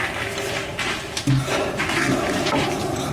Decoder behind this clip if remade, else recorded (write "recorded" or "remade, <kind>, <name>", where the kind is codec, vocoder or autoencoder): recorded